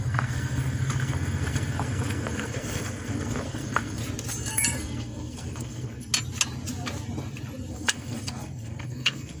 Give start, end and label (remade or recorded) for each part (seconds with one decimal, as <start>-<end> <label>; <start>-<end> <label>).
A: 0.0-4.0 remade; 4.0-4.5 recorded; 4.5-6.1 remade; 6.1-7.7 recorded; 7.7-9.4 remade